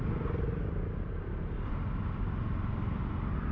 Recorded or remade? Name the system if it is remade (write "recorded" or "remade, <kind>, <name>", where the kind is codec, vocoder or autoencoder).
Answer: recorded